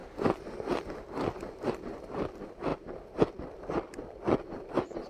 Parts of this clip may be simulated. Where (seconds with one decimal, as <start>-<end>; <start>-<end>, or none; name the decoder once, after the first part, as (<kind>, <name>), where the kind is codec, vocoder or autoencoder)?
none